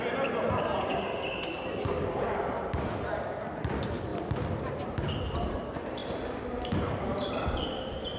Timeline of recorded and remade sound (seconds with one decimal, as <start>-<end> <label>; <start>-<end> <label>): 0.0-6.0 remade; 6.0-6.6 recorded; 6.6-8.2 remade